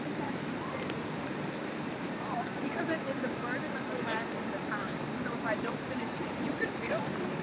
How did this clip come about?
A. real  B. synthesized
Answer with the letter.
B